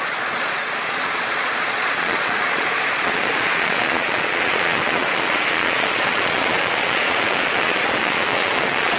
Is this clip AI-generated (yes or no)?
yes